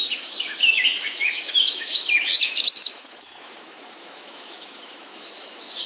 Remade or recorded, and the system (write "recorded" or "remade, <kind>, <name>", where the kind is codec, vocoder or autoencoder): remade, autoencoder, DAC-VAE